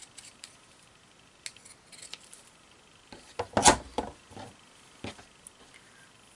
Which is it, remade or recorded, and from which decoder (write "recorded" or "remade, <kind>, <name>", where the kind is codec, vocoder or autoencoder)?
recorded